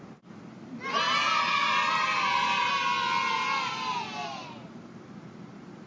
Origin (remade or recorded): recorded